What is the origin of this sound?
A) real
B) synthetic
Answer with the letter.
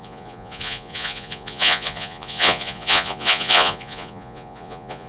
B